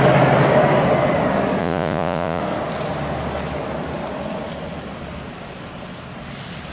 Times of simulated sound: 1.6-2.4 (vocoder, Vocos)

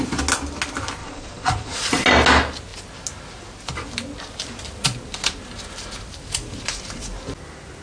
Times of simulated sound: 1.0-2.0 (vocoder, Vocos)

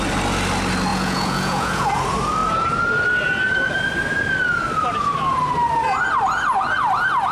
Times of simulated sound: 0.9-1.9 (vocoder, Vocos)